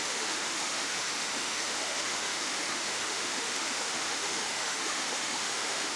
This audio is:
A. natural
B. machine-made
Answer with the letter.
B